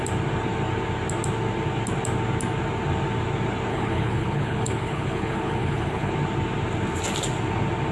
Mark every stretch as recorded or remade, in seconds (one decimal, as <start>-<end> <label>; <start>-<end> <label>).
0.0-3.7 recorded; 3.7-6.1 remade; 6.1-7.9 recorded